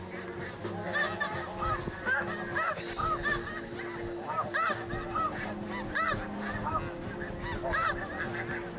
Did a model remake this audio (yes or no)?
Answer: no